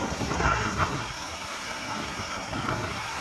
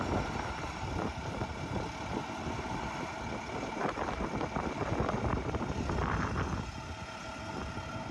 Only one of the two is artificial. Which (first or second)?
first